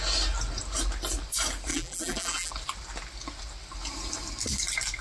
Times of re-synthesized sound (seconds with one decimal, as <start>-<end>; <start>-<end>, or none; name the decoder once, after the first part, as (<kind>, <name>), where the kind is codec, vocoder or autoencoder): 1.7-2.5 (vocoder, BigVGAN v2)